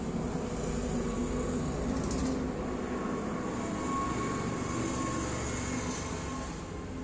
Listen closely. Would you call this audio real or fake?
real